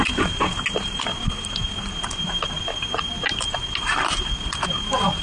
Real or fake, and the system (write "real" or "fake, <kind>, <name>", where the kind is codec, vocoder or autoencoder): real